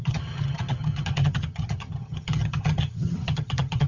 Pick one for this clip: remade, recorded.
remade